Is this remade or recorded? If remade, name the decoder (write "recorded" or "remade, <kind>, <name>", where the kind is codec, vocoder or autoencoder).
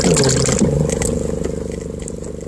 recorded